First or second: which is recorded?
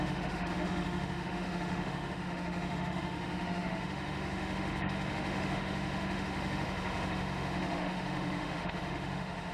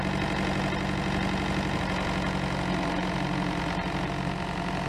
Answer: second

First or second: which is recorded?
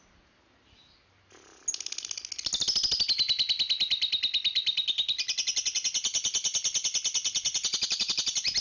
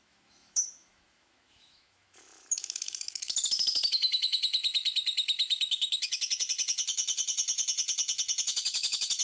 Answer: first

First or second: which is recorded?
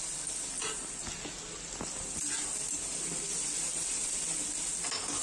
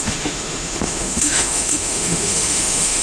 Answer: first